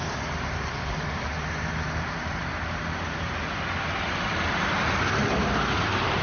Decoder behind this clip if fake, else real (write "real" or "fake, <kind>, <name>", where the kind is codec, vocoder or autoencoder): fake, vocoder, BigVGAN v2